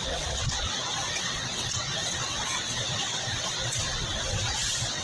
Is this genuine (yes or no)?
no